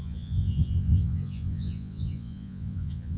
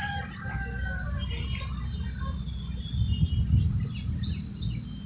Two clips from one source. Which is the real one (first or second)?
second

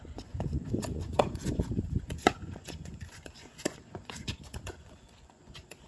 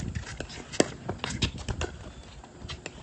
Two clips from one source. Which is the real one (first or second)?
second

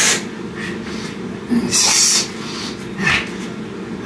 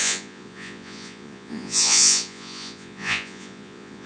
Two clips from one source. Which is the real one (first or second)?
first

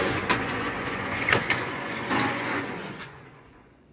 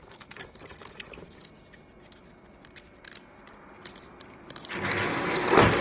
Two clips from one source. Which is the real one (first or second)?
second